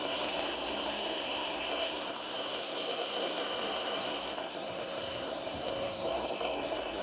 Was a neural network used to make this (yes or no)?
yes